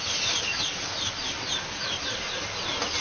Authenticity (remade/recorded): recorded